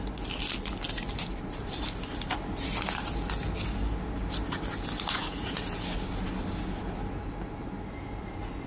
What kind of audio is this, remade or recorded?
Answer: recorded